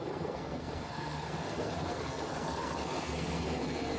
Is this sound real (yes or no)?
no